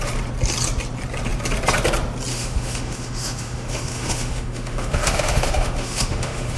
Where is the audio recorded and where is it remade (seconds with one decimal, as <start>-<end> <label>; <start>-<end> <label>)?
0.0-2.3 recorded; 2.3-6.6 remade